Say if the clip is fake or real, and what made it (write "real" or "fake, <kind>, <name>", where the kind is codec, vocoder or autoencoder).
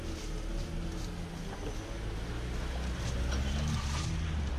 real